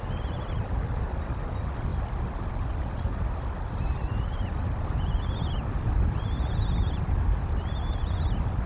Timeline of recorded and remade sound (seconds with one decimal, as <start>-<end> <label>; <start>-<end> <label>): 0.0-8.7 recorded